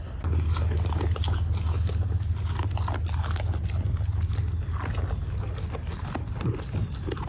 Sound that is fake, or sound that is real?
real